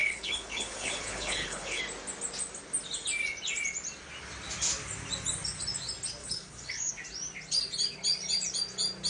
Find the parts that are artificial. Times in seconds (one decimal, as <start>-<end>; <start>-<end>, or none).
0.0-1.8; 6.2-6.9